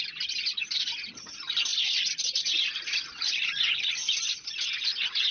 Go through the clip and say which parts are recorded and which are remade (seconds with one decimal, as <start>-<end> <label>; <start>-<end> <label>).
0.0-5.3 recorded